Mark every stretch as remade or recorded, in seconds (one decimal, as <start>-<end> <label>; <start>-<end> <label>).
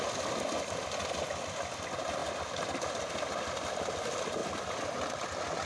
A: 0.0-5.7 recorded